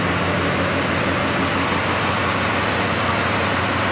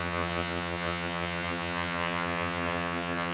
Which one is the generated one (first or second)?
second